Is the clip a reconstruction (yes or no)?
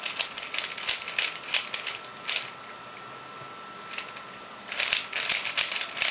no